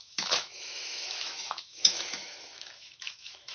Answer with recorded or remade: remade